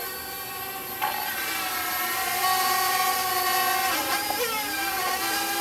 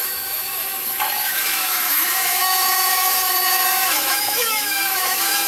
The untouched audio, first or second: first